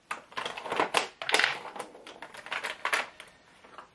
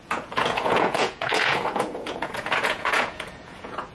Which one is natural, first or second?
first